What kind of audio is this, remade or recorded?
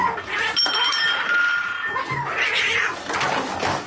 recorded